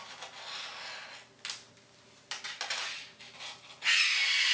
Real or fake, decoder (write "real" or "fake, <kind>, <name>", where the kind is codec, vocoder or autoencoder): real